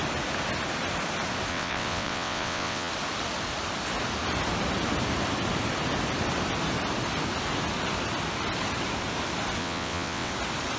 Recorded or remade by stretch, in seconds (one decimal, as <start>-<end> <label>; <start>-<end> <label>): 0.0-1.5 recorded; 1.5-2.9 remade; 2.9-9.6 recorded; 9.6-10.3 remade; 10.3-10.8 recorded